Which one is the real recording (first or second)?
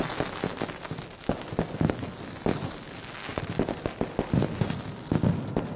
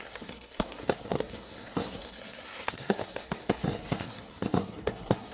first